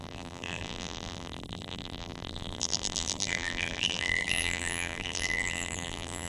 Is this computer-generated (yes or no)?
yes